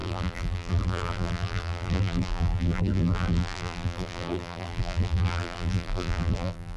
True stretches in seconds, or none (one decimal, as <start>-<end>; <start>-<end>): none